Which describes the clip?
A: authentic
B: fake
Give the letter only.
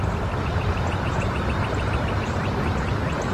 B